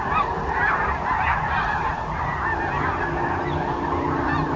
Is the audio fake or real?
real